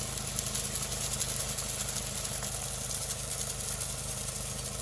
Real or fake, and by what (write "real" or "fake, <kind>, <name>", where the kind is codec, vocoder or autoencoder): real